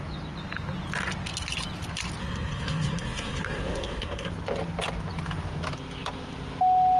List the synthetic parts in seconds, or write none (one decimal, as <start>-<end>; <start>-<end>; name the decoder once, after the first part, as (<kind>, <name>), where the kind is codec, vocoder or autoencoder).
2.2-4.3 (codec, SNAC)